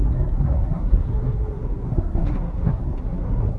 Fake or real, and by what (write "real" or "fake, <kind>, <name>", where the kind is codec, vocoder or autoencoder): fake, codec, SNAC